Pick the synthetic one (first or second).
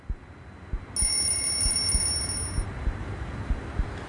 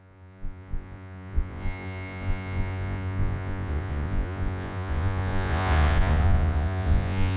second